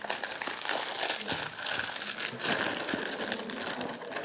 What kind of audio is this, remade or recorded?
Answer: recorded